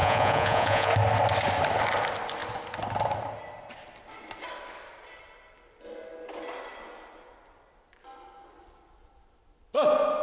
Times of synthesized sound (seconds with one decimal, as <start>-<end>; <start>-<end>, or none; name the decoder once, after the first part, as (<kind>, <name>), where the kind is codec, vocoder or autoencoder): 0.0-0.9 (vocoder, Vocos)